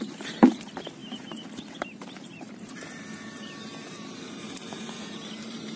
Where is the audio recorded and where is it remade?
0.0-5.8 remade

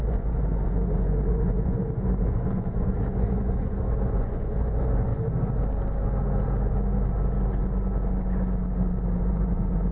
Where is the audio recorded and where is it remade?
0.0-5.1 remade; 5.1-9.3 recorded; 9.3-9.9 remade